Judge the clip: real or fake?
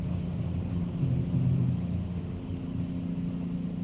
fake